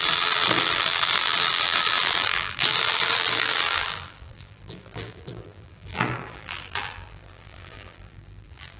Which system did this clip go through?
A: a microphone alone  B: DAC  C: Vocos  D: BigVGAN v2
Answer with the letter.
D